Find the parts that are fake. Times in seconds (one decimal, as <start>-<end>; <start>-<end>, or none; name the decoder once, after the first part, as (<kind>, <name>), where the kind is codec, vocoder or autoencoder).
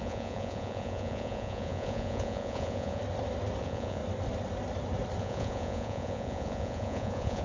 0.0-3.0 (vocoder, Vocos); 3.6-4.0; 5.2-7.4